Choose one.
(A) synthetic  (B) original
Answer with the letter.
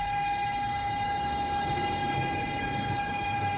A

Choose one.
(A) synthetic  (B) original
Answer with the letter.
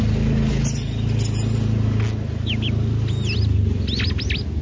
B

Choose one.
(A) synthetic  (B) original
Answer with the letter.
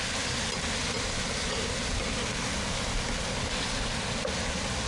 B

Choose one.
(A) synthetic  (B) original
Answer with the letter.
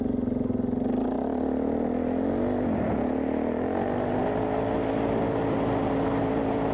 B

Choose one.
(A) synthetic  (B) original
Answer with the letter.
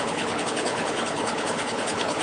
A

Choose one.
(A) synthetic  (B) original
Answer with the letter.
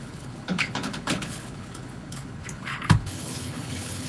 A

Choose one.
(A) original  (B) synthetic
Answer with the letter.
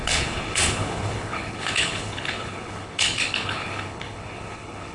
B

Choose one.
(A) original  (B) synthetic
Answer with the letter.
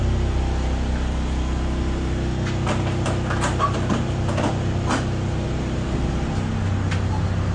A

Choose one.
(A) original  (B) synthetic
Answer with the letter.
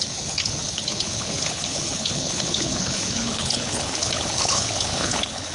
B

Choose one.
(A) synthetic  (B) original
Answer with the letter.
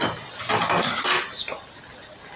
B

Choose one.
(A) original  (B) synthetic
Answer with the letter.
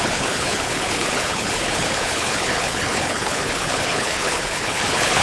B